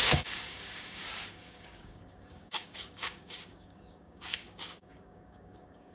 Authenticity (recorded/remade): remade